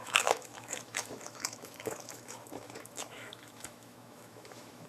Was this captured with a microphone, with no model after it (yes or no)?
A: no